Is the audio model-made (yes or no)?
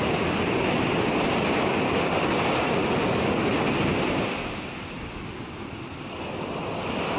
no